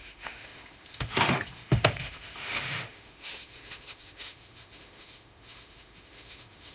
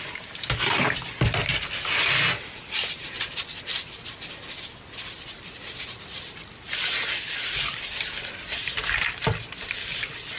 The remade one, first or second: first